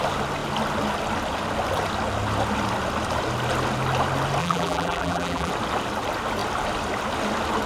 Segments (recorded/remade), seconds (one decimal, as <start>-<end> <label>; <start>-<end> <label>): 0.0-4.4 recorded; 4.4-5.5 remade; 5.5-7.7 recorded